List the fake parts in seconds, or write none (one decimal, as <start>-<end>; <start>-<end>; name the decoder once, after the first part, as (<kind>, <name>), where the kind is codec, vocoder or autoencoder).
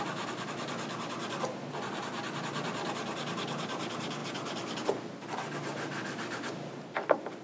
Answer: none